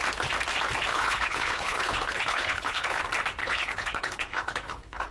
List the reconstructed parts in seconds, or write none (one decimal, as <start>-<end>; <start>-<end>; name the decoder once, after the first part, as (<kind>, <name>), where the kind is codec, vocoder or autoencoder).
0.9-3.0 (codec, HILCodec); 3.4-5.1